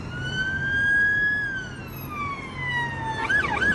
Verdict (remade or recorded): recorded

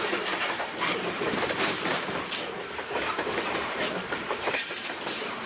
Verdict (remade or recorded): remade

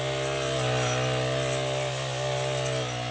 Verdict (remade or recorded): recorded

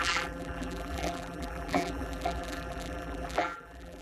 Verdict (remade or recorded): remade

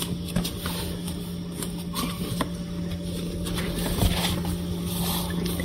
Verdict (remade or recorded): recorded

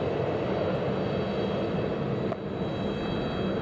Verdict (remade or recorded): recorded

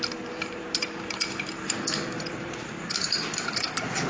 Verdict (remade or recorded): remade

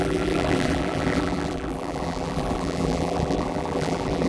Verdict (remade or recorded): remade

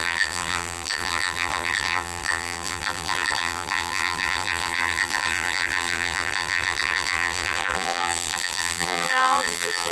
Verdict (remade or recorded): remade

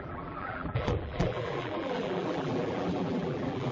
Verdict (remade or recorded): remade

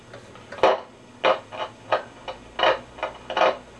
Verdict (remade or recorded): recorded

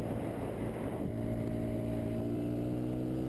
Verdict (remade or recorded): remade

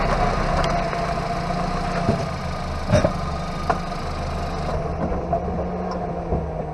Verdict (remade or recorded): recorded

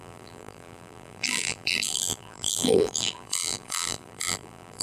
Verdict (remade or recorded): remade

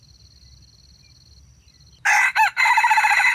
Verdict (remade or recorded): recorded